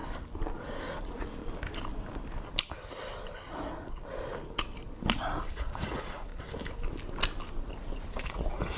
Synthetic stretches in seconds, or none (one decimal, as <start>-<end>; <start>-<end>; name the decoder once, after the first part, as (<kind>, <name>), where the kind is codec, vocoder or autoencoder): 0.6-1.4 (vocoder, Vocos); 5.5-6.3; 8.1-8.8